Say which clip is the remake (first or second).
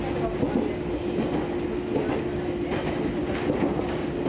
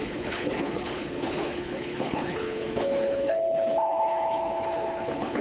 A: second